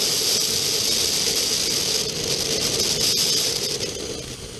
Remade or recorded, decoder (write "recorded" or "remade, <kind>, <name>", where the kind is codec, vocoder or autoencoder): recorded